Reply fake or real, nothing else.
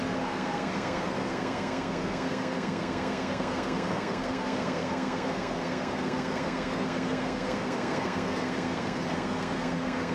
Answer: fake